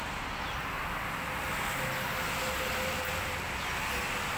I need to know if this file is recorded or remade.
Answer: recorded